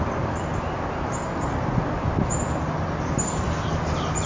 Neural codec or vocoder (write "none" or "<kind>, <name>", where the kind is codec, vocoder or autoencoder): none